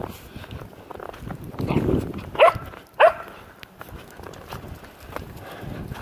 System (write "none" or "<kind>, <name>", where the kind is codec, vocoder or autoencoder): none